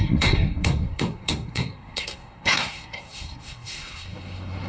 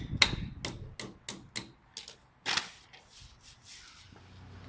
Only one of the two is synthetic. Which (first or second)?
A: first